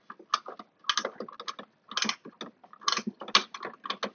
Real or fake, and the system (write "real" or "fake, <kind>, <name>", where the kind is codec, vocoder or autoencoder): real